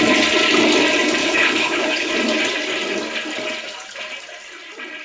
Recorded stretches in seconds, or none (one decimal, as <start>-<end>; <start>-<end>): 0.0-1.2; 2.1-5.0